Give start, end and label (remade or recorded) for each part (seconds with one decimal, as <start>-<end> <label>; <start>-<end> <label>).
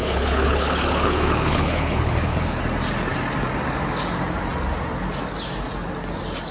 0.0-2.6 remade; 2.6-6.5 recorded